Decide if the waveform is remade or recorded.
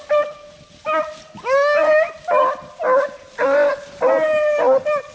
recorded